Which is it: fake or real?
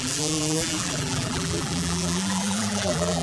fake